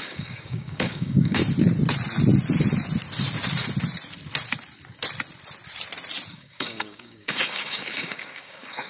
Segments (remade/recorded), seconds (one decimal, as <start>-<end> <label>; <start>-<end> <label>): 0.0-1.4 remade; 1.4-6.3 recorded; 6.3-8.9 remade